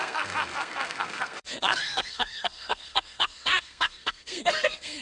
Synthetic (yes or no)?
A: yes